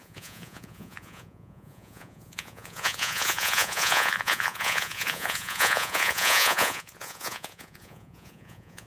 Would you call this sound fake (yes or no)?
yes